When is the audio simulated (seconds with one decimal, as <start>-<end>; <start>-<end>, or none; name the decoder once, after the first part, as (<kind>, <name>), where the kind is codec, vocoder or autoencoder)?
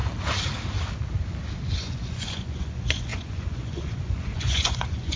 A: 1.7-5.2 (vocoder, Vocos)